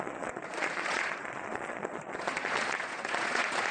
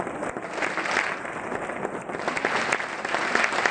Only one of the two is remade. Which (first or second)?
first